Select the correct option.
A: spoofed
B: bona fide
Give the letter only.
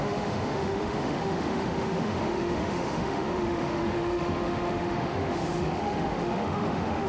A